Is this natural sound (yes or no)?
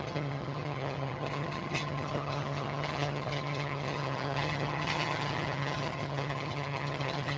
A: no